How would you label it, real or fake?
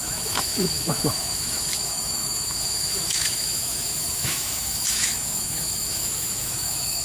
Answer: fake